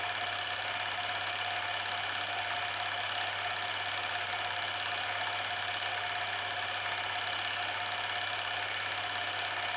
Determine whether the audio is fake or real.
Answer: real